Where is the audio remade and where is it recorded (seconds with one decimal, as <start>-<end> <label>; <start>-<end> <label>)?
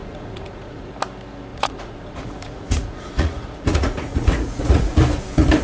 0.0-0.9 remade; 0.9-1.5 recorded; 1.5-4.9 remade; 4.9-5.6 recorded